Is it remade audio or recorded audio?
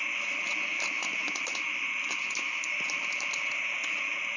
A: recorded